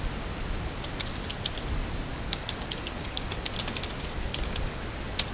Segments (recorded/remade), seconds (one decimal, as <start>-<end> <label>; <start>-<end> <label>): 0.0-2.1 recorded; 2.1-3.5 remade; 3.5-4.3 recorded; 4.3-4.8 remade; 4.8-5.3 recorded